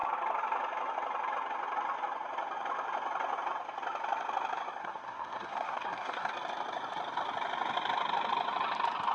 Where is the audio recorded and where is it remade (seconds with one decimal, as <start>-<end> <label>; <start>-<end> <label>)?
0.0-4.8 recorded; 4.8-6.3 remade; 6.3-9.1 recorded